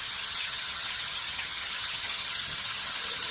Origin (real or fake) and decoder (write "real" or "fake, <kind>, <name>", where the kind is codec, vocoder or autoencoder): fake, vocoder, HiFi-GAN